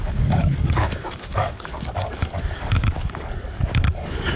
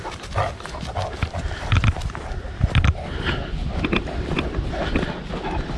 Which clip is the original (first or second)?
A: second